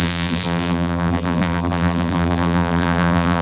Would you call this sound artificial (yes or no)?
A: yes